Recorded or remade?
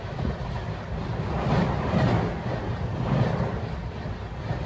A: recorded